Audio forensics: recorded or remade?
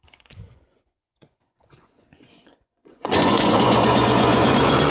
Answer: remade